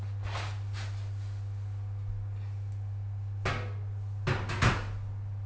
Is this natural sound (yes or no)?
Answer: yes